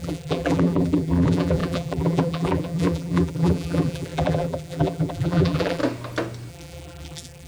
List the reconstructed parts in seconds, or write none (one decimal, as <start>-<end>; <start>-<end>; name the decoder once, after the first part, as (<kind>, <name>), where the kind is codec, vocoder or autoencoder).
0.0-5.8 (vocoder, BigVGAN v2); 6.5-7.5